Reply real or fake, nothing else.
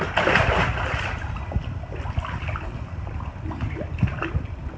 real